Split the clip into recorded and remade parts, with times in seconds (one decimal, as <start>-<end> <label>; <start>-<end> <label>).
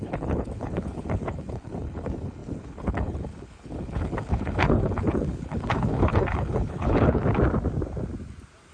0.0-7.2 remade; 7.2-8.7 recorded